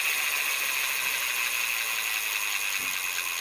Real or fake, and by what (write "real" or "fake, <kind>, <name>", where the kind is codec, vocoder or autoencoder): real